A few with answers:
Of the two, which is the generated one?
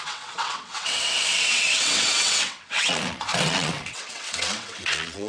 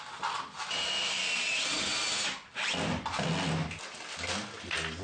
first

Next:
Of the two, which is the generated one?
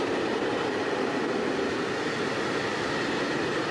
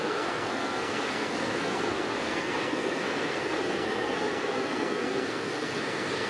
second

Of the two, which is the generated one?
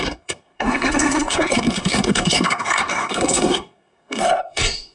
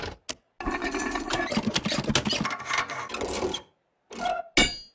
first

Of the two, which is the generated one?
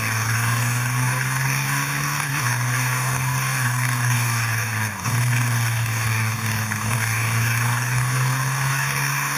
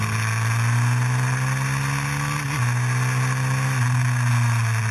first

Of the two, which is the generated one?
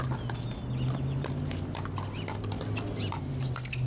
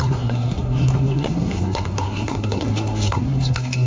second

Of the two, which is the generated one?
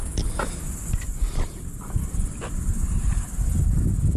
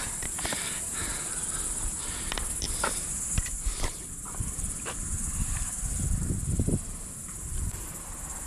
second